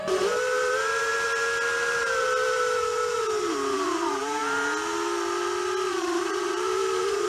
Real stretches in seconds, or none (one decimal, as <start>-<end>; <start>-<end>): 1.1-2.0; 4.4-5.9